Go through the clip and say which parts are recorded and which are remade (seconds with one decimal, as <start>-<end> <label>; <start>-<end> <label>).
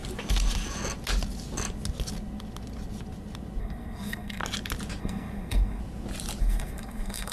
0.0-3.6 recorded; 3.6-4.4 remade; 4.4-5.0 recorded; 5.0-5.8 remade; 5.8-6.4 recorded; 6.4-7.3 remade